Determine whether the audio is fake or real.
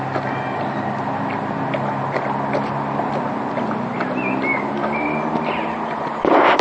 real